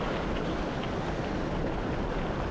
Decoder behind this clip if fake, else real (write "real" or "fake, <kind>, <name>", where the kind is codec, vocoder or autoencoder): real